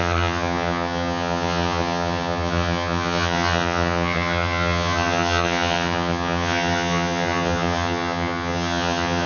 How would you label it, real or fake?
fake